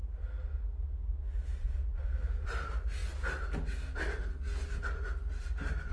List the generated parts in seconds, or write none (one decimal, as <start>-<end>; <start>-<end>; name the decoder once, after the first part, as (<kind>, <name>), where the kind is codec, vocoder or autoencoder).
none